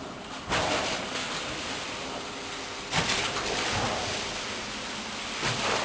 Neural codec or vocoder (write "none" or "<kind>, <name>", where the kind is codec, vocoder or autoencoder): none